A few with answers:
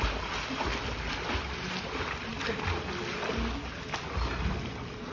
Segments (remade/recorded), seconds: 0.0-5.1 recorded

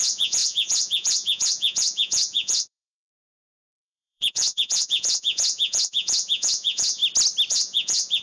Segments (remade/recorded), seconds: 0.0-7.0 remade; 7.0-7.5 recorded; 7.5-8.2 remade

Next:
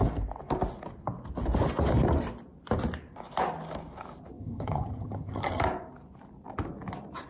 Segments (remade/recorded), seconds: 0.0-4.4 recorded; 4.4-5.6 remade; 5.6-7.3 recorded

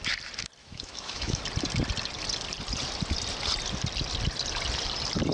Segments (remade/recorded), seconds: 0.0-0.6 recorded; 0.6-1.4 remade; 1.4-5.3 recorded

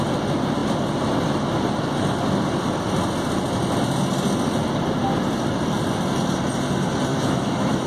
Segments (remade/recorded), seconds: 0.0-7.1 recorded; 7.1-7.9 remade

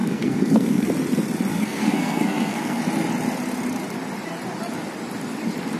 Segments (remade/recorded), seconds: 0.0-0.9 remade; 0.9-1.5 recorded; 1.5-2.8 remade; 2.8-5.8 recorded

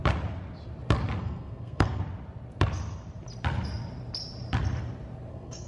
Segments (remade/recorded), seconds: 0.0-1.2 recorded; 1.2-2.0 remade; 2.0-5.3 recorded; 5.3-5.7 remade

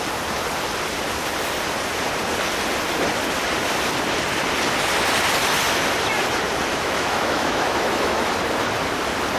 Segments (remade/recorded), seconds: 0.0-6.7 recorded; 6.7-8.3 remade; 8.3-9.4 recorded